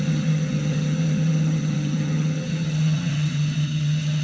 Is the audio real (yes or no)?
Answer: no